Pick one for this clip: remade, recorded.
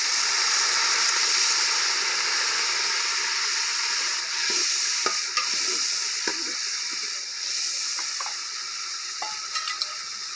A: recorded